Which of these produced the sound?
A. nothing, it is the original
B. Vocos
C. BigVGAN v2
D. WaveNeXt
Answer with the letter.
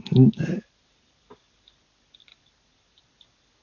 A